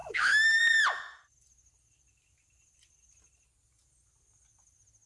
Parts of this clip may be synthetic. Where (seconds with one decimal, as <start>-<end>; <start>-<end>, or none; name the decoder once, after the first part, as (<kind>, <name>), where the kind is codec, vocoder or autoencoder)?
0.0-0.6 (autoencoder, DAC-VAE)